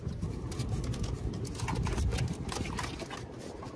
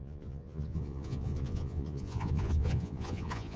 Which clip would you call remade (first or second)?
second